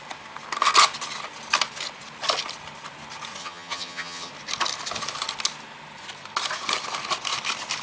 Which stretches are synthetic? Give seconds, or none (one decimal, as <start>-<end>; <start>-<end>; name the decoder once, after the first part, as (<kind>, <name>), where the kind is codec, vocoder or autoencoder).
3.4-4.3 (vocoder, HiFi-GAN)